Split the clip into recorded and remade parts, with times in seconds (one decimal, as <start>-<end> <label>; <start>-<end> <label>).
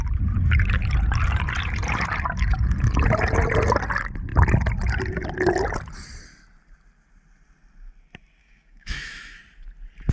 0.0-8.4 recorded; 8.4-9.4 remade; 9.4-10.1 recorded